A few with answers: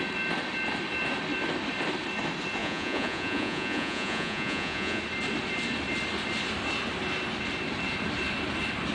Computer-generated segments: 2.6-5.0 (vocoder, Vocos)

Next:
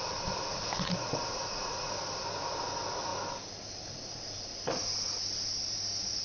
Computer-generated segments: 1.3-1.9 (vocoder, Vocos)